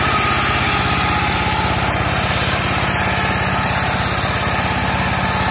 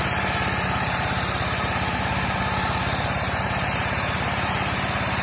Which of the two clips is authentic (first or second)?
first